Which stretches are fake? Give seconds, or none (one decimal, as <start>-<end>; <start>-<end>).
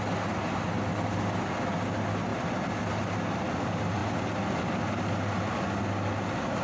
none